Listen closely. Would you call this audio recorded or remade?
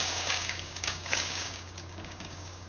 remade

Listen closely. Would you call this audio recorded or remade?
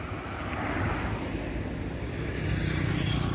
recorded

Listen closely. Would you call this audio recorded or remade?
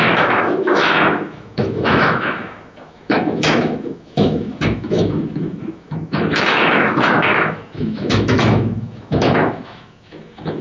remade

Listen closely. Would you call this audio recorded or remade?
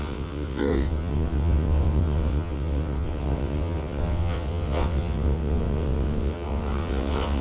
remade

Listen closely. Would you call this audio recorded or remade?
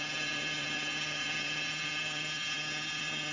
remade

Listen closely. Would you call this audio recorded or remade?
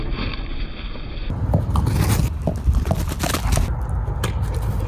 recorded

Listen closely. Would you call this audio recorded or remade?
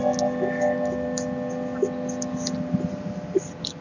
recorded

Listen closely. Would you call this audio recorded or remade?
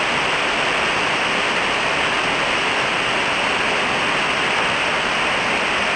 recorded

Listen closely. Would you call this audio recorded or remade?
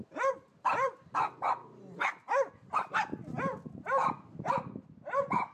recorded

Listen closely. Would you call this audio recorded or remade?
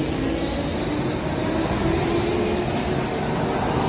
recorded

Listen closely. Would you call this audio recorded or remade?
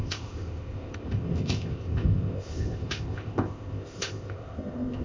remade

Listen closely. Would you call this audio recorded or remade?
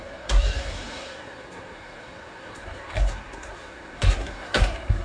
remade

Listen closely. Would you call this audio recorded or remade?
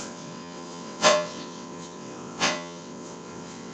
remade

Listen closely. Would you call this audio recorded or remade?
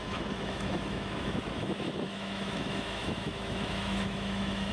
remade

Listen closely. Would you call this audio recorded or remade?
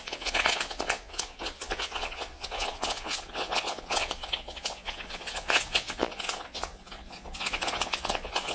remade